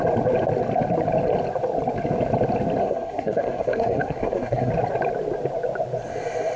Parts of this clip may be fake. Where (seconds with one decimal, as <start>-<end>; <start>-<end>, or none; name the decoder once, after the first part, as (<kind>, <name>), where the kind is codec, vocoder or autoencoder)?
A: 2.8-4.7 (codec, SNAC)